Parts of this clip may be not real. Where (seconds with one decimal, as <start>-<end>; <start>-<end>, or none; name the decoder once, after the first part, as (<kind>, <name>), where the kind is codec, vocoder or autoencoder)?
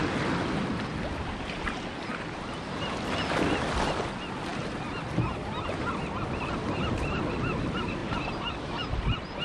6.6-7.2 (vocoder, BigVGAN v2); 8.0-9.4